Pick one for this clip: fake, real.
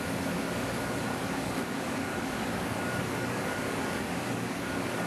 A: fake